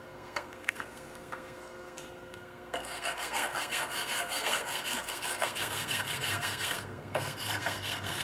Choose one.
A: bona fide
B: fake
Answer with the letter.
B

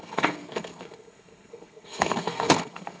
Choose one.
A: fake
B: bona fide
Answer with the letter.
A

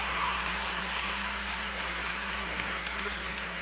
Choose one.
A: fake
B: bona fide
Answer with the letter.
A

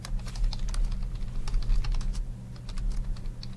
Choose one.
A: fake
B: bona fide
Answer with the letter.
B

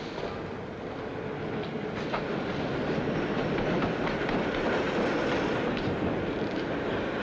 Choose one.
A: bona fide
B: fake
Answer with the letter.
A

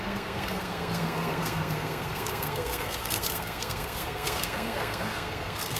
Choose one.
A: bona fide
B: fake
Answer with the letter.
B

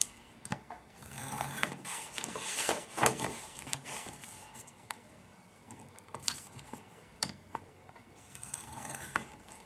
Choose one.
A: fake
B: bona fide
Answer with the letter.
A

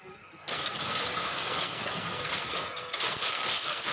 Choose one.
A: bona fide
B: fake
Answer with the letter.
B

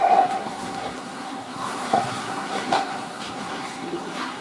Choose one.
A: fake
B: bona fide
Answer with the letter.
A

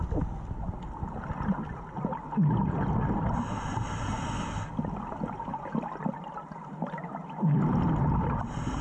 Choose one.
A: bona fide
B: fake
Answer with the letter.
A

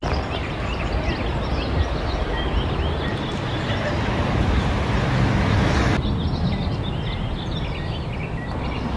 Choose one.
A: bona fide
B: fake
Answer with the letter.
A